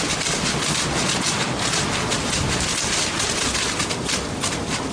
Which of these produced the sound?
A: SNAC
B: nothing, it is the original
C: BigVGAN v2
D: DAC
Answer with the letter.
B